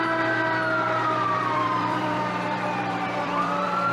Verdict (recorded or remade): remade